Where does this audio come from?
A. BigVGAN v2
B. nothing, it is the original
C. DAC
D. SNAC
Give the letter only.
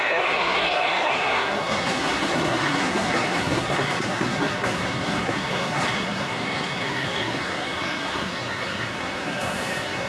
D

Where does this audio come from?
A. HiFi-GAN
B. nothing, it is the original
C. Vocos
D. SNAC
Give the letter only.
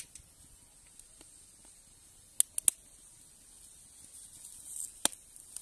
B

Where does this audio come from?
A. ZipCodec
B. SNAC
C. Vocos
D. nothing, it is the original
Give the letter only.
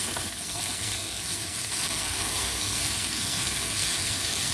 B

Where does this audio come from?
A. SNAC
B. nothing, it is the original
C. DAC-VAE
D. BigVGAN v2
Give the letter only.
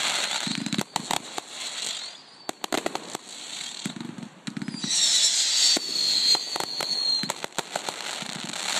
B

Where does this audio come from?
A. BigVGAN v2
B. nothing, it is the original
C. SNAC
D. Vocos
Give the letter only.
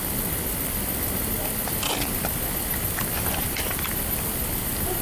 B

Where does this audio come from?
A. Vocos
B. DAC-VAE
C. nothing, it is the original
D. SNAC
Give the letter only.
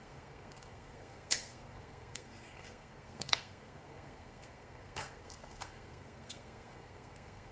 D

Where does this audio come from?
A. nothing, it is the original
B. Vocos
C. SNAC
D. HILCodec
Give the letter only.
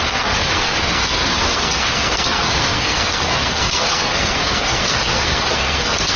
C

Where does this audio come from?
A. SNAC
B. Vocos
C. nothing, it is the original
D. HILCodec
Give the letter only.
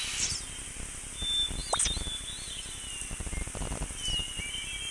C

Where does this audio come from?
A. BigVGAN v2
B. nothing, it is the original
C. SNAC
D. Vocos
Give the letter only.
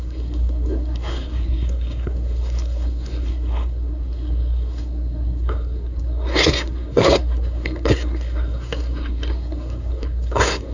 C